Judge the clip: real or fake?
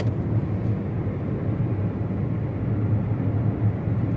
real